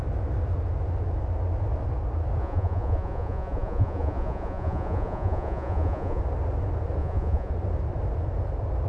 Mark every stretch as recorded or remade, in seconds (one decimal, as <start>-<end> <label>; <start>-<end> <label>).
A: 0.0-2.4 recorded; 2.4-6.2 remade; 6.2-7.0 recorded; 7.0-7.5 remade; 7.5-8.9 recorded